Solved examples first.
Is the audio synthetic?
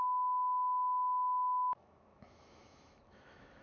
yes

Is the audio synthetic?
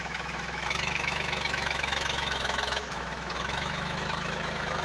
yes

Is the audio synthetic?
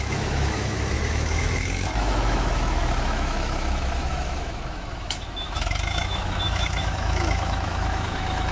yes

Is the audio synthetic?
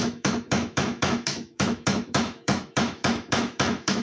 yes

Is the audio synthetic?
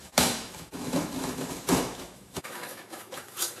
yes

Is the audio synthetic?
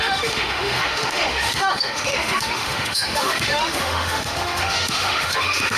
yes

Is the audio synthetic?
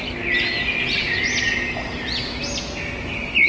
no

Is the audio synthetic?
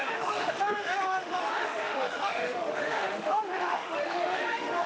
yes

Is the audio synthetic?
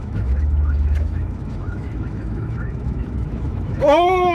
yes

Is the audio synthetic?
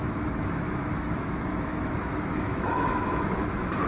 yes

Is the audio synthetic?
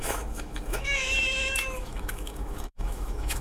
yes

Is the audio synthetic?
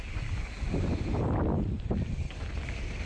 no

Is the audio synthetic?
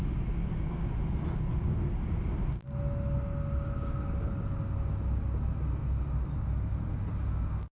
no